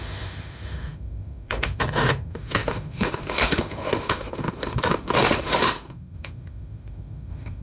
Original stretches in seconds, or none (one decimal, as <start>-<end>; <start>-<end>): none